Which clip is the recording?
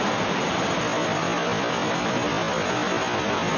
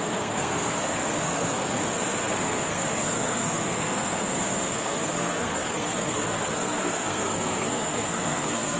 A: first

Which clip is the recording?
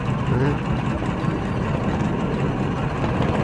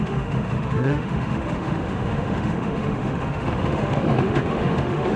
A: first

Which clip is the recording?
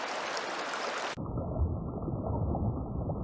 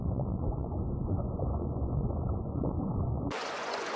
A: first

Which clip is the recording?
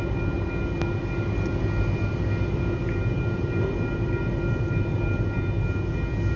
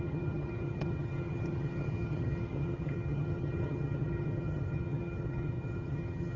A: first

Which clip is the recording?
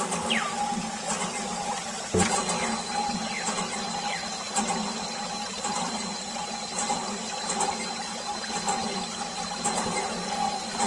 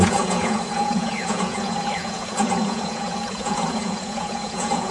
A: first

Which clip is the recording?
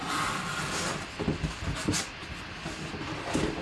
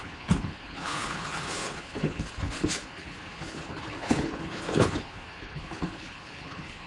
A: first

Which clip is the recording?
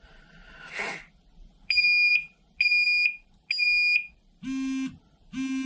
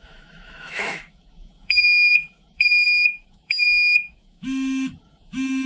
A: first